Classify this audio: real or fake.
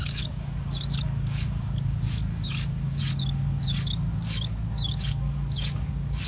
fake